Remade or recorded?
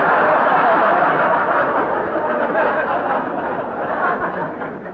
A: recorded